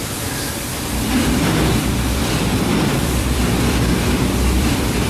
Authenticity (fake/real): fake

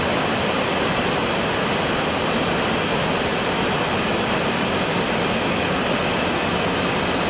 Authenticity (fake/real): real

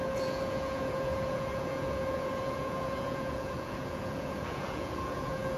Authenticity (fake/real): fake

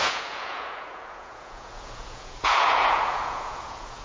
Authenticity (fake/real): fake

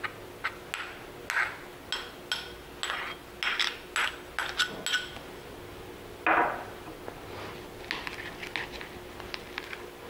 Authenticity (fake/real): real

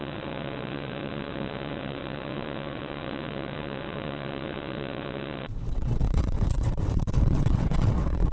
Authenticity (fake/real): fake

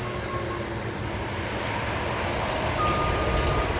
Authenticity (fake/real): real